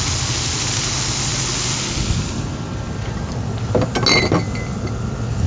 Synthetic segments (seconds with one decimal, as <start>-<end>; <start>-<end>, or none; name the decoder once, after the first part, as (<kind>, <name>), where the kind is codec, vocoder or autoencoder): none